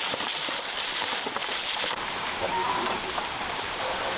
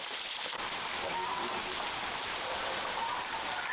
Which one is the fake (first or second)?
first